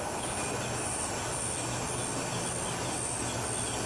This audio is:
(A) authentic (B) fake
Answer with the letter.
A